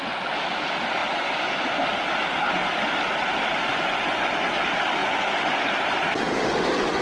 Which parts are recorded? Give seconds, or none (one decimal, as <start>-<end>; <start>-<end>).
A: 0.0-1.0; 1.6-3.7; 4.5-5.0; 5.6-7.0